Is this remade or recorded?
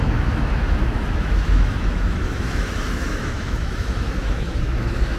remade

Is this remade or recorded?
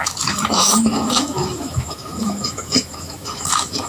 remade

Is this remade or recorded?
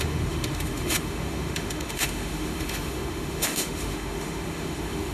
remade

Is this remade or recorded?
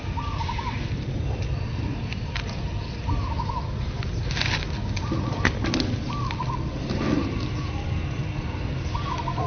recorded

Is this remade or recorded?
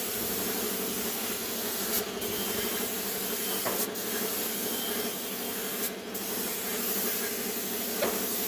recorded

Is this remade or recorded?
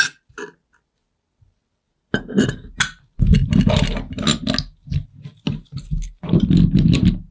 recorded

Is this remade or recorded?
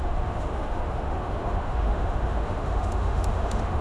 remade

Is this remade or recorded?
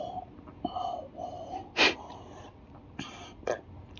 recorded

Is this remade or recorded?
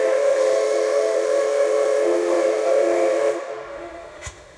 remade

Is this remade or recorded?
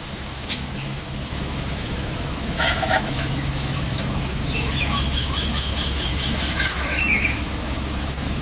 remade